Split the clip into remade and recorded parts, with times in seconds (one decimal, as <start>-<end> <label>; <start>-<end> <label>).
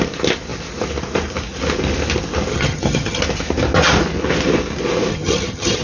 0.0-2.5 recorded; 2.5-3.2 remade; 3.2-5.1 recorded; 5.1-5.8 remade